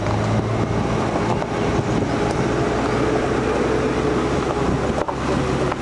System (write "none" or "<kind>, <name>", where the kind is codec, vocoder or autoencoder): none